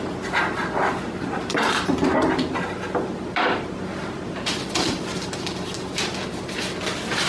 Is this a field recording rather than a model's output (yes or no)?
no